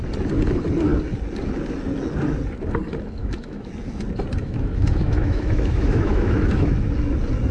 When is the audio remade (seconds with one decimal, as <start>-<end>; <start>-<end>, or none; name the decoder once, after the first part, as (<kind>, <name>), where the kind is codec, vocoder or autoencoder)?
3.2-3.7 (autoencoder, DAC-VAE); 4.4-6.7